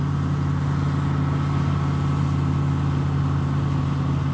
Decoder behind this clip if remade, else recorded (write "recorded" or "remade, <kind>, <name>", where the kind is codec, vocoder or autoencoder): recorded